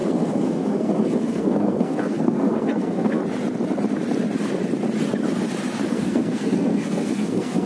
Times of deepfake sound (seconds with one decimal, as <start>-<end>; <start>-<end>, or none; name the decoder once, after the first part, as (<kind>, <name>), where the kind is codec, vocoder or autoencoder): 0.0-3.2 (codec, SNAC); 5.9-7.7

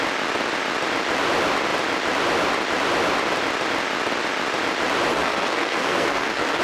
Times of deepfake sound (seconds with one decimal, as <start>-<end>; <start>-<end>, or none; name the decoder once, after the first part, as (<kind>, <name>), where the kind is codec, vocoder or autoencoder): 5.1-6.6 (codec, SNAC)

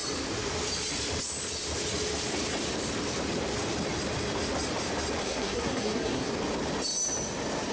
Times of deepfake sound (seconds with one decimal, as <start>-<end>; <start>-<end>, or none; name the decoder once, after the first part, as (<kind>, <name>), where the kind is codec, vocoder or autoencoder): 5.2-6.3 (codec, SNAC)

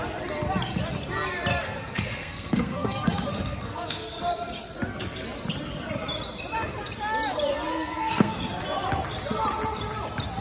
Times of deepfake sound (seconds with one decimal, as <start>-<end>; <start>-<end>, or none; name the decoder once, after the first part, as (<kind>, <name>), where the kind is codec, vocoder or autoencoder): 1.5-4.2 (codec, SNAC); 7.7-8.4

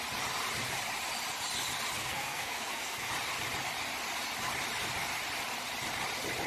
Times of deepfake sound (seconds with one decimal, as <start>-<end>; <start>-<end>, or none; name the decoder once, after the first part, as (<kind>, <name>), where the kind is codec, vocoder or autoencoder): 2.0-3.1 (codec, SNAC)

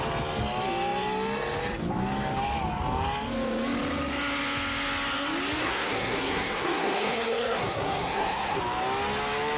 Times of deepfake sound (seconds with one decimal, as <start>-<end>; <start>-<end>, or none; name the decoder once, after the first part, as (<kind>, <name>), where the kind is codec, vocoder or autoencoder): 5.6-8.6 (codec, SNAC)

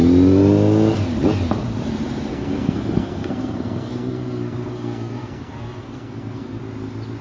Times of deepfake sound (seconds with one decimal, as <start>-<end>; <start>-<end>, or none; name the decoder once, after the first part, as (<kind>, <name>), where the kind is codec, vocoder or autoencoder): 2.3-6.6 (codec, SNAC)

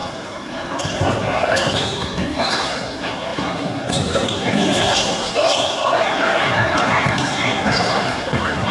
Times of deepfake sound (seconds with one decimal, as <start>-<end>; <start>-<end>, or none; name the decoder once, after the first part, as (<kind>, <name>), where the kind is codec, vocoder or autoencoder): 0.0-8.7 (codec, SNAC)